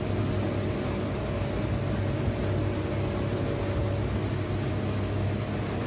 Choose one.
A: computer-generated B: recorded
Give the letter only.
B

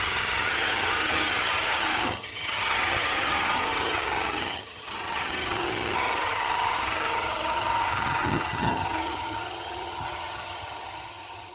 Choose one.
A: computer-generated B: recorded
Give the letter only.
A